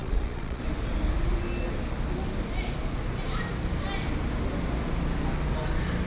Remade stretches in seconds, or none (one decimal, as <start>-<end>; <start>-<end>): 0.0-0.6